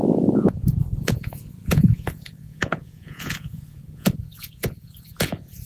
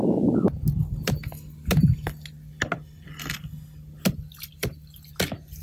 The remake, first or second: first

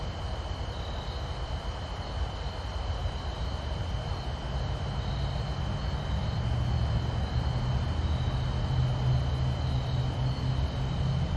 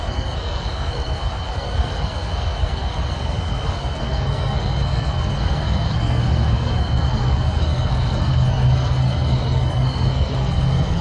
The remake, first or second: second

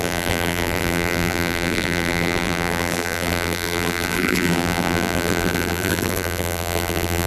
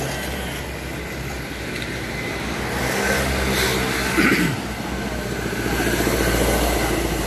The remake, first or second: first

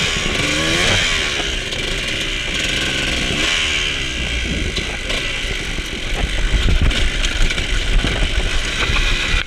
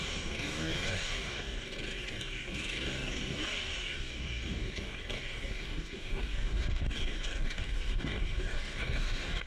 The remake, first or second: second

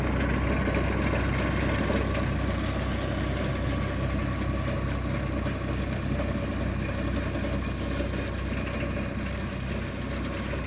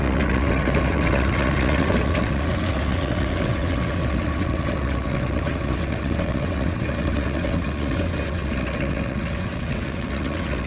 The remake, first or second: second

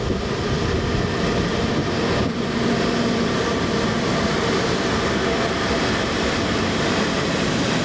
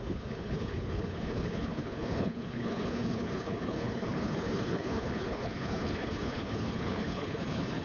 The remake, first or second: second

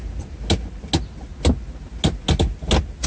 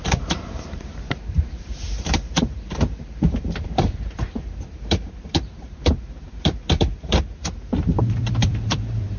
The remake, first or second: second